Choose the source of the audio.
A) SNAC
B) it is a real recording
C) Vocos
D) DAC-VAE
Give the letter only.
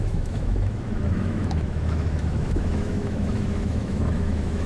D